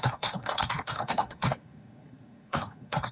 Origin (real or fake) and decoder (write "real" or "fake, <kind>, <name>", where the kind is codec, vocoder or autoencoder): fake, codec, SNAC